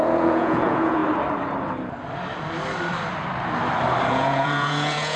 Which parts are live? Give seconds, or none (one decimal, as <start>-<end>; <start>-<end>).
1.0-4.1